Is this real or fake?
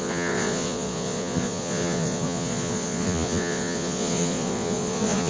fake